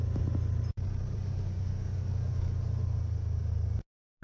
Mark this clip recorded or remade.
recorded